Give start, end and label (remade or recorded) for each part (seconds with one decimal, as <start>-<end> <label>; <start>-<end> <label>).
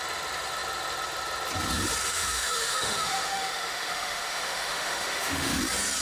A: 0.0-2.0 recorded; 2.0-5.6 remade; 5.6-6.0 recorded